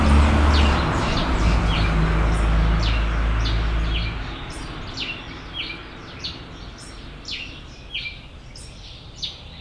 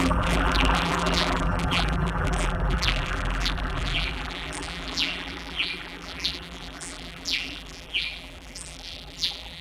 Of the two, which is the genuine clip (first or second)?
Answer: first